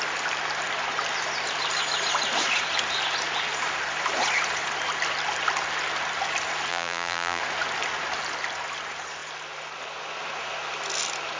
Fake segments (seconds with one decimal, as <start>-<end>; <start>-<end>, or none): 6.7-7.4

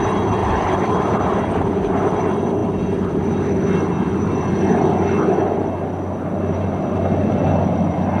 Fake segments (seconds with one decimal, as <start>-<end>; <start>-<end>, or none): 0.4-1.1

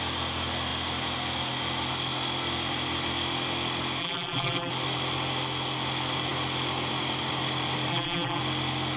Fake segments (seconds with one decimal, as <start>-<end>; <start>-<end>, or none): 4.0-4.7; 7.9-8.4

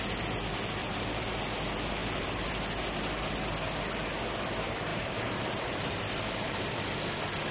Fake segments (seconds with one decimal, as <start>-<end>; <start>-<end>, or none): 0.8-1.4; 2.0-2.5; 4.9-6.6

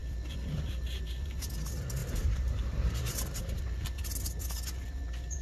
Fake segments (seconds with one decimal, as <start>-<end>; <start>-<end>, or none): 2.0-3.6

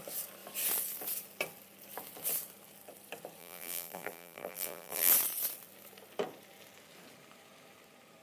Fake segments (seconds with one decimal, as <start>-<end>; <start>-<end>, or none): 3.4-5.1